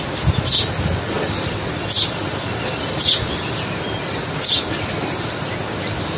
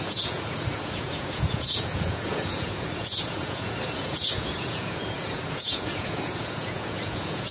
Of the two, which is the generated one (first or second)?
second